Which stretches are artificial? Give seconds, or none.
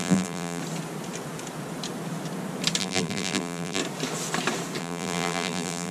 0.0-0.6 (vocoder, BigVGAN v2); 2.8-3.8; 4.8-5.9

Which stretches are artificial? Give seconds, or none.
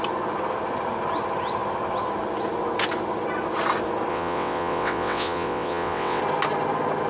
4.1-6.2 (vocoder, WaveNeXt)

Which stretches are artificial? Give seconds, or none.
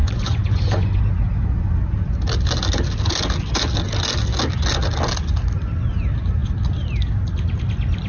0.0-1.0 (vocoder, Vocos)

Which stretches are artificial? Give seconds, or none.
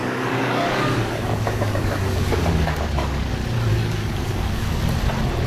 0.0-3.3 (codec, DAC); 3.7-4.8